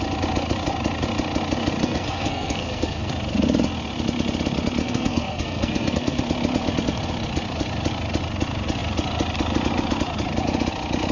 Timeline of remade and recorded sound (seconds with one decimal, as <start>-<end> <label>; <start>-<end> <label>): 0.0-1.8 recorded; 1.8-3.1 remade; 3.1-4.8 recorded; 4.8-6.2 remade; 6.2-11.1 recorded